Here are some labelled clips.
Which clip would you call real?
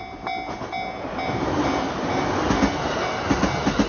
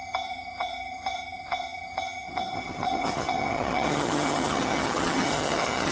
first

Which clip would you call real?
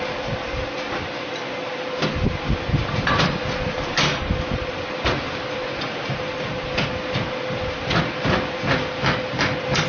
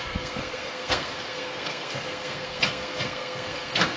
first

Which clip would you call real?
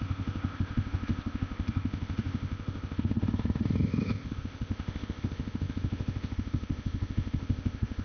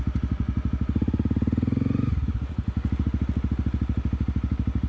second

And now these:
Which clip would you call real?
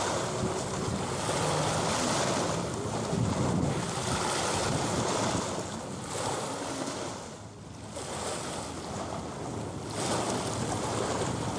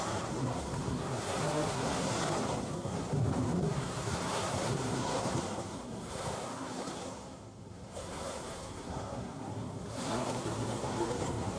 first